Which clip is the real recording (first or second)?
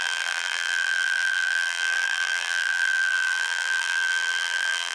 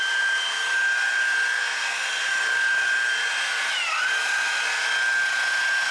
second